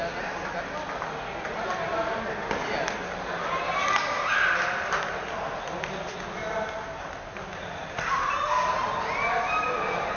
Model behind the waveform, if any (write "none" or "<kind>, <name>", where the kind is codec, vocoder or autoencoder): none